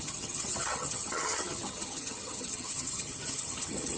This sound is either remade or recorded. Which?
remade